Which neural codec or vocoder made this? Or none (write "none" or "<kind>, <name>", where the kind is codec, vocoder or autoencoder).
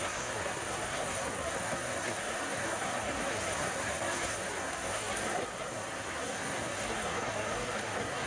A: codec, SNAC